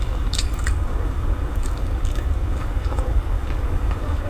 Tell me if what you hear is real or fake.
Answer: fake